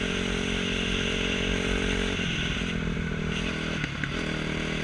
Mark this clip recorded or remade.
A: recorded